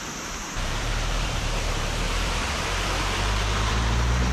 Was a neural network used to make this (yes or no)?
yes